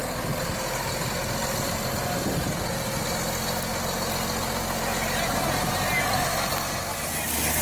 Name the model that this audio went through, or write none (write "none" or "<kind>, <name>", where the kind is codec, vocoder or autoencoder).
none